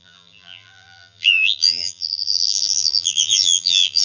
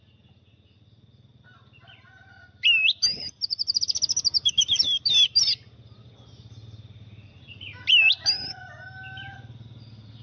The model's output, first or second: first